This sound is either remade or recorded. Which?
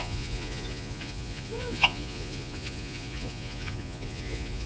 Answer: remade